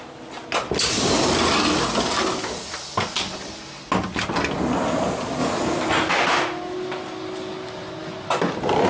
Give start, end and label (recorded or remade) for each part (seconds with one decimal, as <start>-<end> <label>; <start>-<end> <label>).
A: 0.0-8.9 recorded